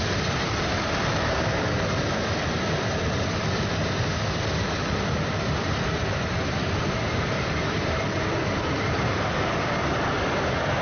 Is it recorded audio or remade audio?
remade